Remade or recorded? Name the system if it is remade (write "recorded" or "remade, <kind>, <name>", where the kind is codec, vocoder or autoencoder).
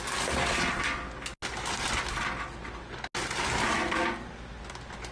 recorded